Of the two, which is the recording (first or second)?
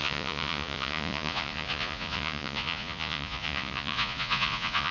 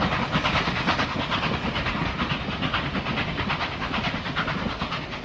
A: second